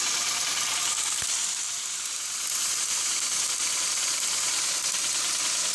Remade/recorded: recorded